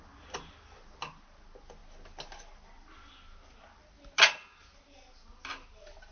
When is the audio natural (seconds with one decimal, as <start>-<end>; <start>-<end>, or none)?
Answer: 0.0-6.1